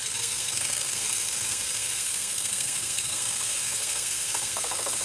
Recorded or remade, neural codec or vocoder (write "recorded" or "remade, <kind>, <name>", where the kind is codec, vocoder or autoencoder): remade, codec, SNAC